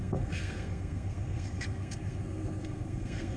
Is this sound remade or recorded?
remade